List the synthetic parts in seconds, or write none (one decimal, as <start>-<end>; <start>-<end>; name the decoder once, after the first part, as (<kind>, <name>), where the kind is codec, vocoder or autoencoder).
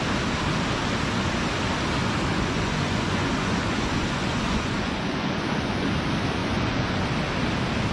2.3-5.9 (vocoder, Vocos); 6.4-7.0